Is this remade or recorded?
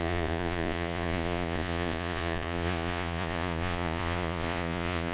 remade